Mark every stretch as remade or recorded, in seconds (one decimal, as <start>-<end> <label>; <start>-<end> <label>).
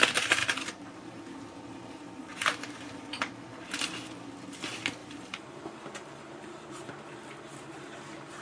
0.0-0.4 recorded; 0.4-3.3 remade; 3.3-5.0 recorded; 5.0-6.9 remade; 6.9-8.4 recorded